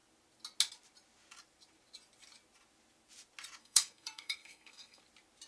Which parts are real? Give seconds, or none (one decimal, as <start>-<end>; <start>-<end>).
0.0-3.6; 5.0-5.5